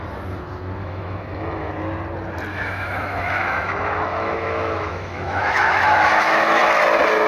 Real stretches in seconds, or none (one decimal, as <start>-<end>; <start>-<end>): 0.0-0.8; 1.7-2.5; 6.6-7.3